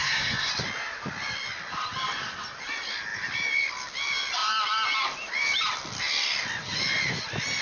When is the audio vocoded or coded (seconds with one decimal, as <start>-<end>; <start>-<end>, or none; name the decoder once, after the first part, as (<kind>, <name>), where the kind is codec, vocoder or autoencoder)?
0.0-0.5 (codec, SNAC)